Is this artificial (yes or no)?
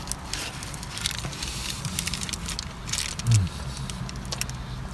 no